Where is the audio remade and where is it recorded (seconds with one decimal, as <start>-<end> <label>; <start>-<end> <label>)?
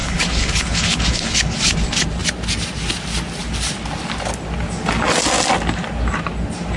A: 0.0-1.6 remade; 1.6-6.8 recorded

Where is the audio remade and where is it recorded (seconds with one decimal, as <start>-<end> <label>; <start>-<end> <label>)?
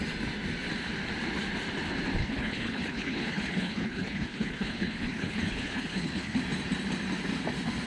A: 0.0-2.2 recorded; 2.2-6.4 remade; 6.4-7.9 recorded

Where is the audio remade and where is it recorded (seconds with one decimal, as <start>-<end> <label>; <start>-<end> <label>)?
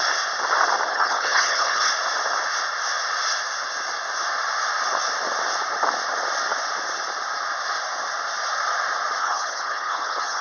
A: 0.0-0.9 recorded; 0.9-1.9 remade; 1.9-9.2 recorded; 9.2-10.4 remade